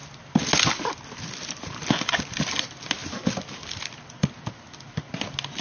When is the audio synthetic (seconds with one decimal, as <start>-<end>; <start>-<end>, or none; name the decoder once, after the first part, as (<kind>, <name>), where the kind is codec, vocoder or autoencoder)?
none